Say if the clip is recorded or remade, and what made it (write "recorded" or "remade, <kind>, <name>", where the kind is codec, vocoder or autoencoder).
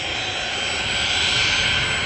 recorded